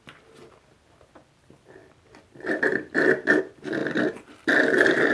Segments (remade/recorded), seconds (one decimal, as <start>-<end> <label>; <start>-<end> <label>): 0.0-1.8 recorded; 1.8-3.4 remade; 3.4-3.8 recorded; 3.8-5.1 remade

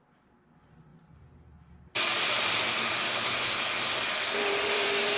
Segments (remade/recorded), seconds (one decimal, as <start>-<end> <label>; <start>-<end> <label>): 0.0-5.2 remade

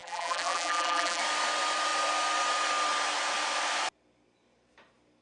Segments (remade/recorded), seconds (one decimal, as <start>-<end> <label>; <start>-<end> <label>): 0.0-1.2 remade; 1.2-5.2 recorded

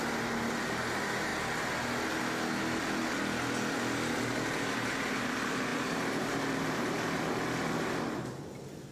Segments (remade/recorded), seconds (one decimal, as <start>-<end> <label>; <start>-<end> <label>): 0.0-5.7 recorded; 5.7-7.2 remade; 7.2-8.9 recorded